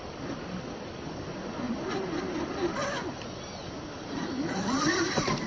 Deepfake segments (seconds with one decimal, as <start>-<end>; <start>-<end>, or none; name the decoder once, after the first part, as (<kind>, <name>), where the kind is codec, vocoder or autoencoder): none

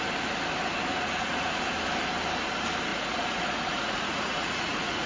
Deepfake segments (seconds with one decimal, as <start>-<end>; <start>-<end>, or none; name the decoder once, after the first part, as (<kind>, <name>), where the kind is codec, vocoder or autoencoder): 0.9-1.5 (vocoder, Vocos); 2.9-5.1